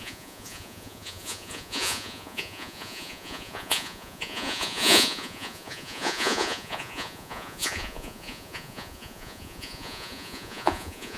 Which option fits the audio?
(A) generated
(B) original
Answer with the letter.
A